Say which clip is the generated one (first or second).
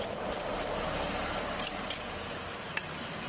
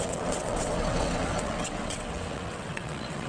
second